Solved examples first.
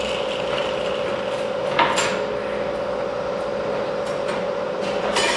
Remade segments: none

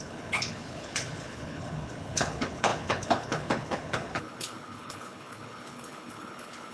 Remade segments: 0.0-6.7 (codec, HILCodec)

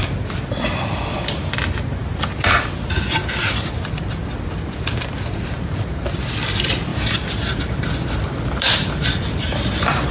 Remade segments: none

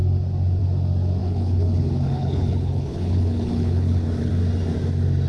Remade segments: 1.2-4.3 (codec, HILCodec)

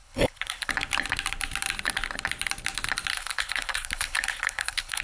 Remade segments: 0.0-0.7 (codec, HILCodec); 3.1-5.0